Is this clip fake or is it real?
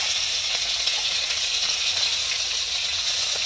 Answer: fake